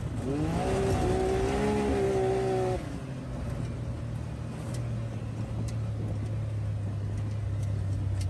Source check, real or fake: real